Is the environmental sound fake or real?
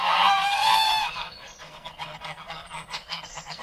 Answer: fake